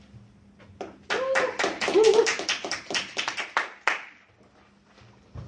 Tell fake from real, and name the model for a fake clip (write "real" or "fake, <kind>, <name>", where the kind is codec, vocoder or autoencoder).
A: real